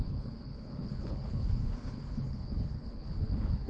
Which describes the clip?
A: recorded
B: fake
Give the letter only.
B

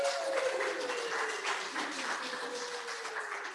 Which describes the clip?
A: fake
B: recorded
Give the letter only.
B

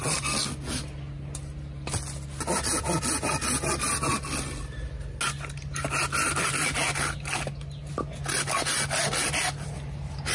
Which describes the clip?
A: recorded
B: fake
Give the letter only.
A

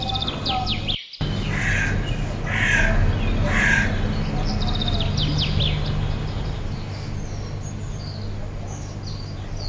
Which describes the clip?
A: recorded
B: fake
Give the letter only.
A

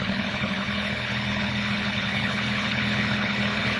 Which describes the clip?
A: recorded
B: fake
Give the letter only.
B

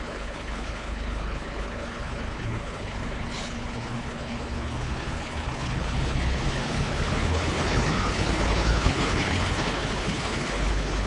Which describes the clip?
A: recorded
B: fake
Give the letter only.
B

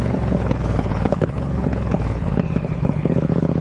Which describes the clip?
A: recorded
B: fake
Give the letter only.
B